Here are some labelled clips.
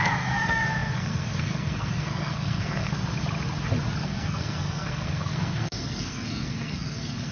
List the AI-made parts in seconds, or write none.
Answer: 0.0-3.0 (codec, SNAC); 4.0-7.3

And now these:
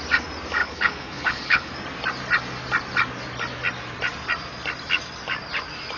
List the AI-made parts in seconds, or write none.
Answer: 0.6-1.7 (codec, HILCodec)

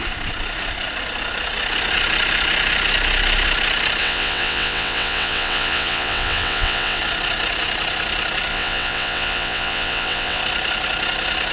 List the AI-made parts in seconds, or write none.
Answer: 4.0-7.0 (vocoder, WaveNeXt); 8.5-10.4